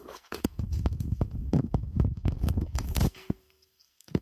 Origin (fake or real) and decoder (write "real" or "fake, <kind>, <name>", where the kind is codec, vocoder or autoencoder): fake, codec, SNAC